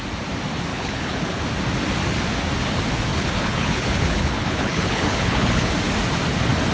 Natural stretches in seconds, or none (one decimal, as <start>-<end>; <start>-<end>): 0.0-0.7; 1.4-3.1; 5.7-6.7